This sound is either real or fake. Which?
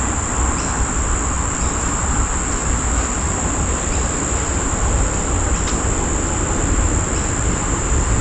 real